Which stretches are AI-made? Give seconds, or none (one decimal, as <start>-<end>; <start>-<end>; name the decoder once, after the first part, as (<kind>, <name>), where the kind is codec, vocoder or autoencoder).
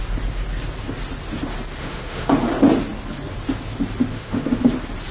1.8-2.3 (autoencoder, DAC-VAE); 4.1-4.6